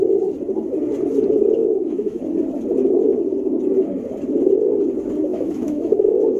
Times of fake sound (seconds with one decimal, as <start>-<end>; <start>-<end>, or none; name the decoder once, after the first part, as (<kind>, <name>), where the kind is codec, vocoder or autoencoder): 1.6-2.2 (autoencoder, DAC-VAE); 5.3-6.4

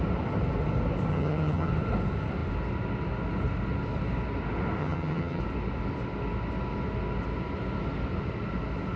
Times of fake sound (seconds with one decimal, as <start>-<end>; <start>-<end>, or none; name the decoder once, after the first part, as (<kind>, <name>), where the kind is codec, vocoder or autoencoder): 1.1-1.7 (vocoder, HiFi-GAN); 4.8-5.4

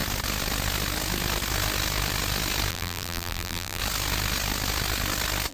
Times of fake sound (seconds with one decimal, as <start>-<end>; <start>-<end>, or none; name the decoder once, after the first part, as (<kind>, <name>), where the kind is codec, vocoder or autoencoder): 2.7-3.8 (vocoder, BigVGAN v2)